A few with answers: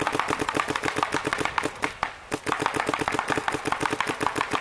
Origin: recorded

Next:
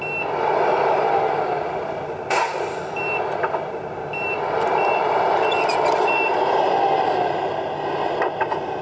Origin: recorded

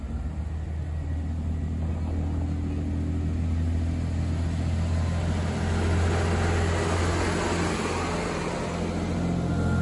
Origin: recorded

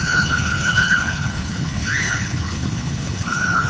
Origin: remade